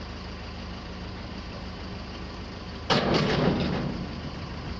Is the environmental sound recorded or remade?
remade